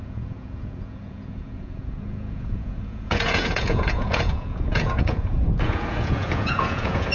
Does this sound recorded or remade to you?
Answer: remade